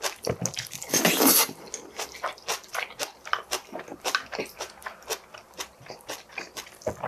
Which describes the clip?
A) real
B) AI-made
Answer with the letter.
A